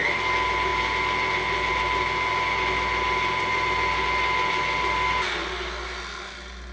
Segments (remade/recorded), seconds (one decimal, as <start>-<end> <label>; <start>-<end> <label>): 0.0-6.7 recorded